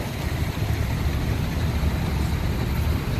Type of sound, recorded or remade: recorded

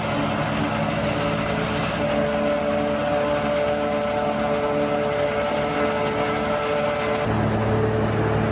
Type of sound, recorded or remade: recorded